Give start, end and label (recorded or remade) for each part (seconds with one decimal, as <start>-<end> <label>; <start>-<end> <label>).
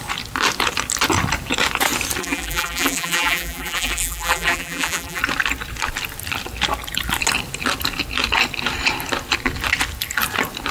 0.0-2.2 recorded; 2.2-5.2 remade; 5.2-10.7 recorded